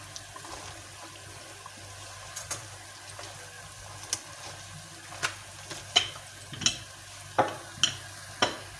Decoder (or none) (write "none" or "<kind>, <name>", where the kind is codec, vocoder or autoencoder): none